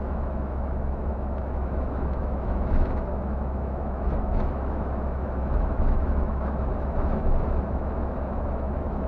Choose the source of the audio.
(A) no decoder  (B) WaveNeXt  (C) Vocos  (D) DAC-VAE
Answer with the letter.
D